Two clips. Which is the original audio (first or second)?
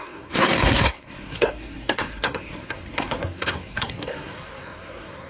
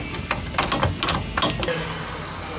second